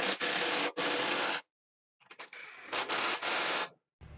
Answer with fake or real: real